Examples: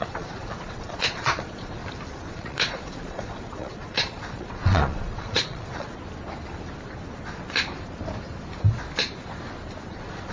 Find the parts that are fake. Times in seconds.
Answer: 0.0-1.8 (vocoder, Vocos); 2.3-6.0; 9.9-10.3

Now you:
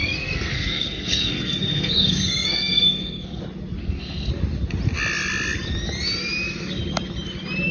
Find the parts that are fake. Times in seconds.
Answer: 0.0-3.4 (codec, SNAC); 3.8-4.3

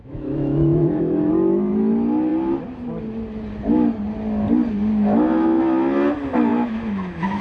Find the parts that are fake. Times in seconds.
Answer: 0.0-1.3 (autoencoder, DAC-VAE); 6.5-7.4

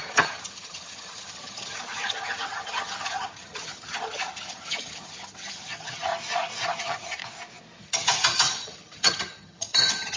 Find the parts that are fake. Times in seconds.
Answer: 0.0-6.1 (vocoder, HiFi-GAN); 6.8-7.2; 7.8-10.2

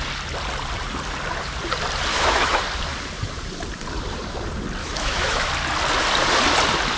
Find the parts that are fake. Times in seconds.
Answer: 2.1-2.6 (autoencoder, DAC-VAE); 4.8-5.5